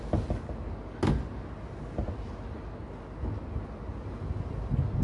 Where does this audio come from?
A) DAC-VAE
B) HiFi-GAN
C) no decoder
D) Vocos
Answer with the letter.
C